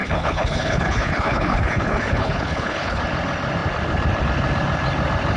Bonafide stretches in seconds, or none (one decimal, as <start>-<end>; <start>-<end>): 3.0-5.4